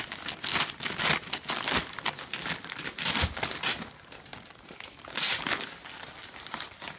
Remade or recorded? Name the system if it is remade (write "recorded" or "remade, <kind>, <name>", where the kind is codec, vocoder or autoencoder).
recorded